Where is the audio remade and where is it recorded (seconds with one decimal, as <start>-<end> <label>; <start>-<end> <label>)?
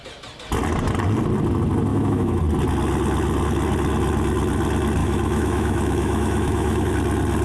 0.0-1.9 recorded; 1.9-2.4 remade; 2.4-5.0 recorded; 5.0-6.9 remade; 6.9-7.4 recorded